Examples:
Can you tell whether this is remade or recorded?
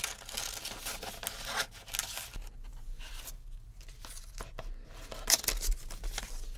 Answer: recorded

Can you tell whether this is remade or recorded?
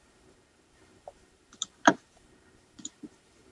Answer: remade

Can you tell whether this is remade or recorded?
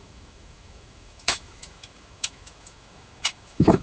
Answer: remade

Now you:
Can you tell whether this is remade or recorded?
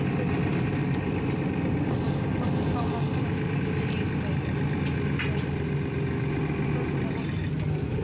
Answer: recorded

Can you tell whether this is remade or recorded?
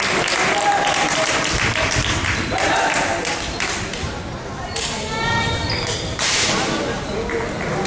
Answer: recorded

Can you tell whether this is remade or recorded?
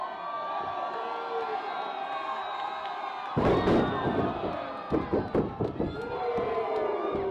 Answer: recorded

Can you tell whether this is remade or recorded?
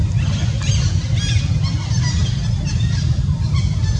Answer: recorded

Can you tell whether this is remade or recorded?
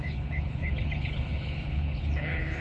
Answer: remade